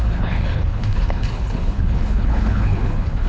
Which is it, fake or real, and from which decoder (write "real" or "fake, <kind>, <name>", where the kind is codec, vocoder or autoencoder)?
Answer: fake, codec, HILCodec